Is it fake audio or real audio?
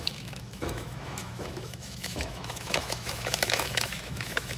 fake